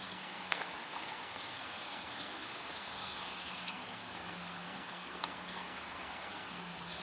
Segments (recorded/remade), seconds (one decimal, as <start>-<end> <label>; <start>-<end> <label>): 0.0-7.0 remade